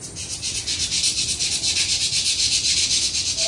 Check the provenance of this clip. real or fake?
real